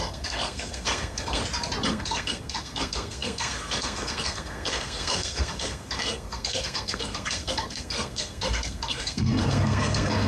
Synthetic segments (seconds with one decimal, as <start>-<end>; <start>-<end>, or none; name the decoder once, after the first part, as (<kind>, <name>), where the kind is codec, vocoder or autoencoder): 0.0-1.4 (codec, SNAC); 1.9-10.3